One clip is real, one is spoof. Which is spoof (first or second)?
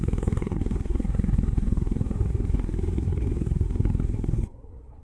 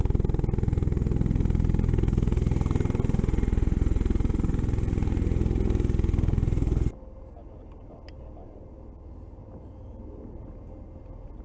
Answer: first